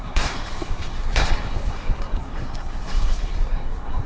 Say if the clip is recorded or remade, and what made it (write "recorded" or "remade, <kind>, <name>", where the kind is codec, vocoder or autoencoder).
remade, codec, SNAC